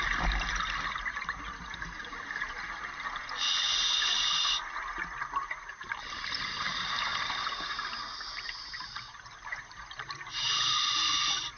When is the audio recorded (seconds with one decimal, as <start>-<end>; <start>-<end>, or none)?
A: 0.0-11.6